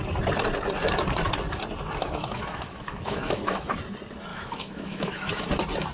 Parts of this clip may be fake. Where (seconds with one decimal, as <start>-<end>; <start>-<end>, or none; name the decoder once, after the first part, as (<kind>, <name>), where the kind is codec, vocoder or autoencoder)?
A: 2.0-3.7 (autoencoder, DAC-VAE); 4.3-5.4